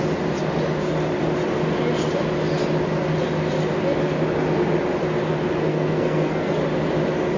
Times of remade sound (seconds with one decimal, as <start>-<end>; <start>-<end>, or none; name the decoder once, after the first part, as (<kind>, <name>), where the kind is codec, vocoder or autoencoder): 5.7-6.5 (codec, SNAC)